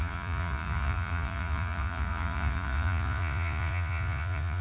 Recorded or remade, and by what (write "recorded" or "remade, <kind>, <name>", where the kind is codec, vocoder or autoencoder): remade, vocoder, Vocos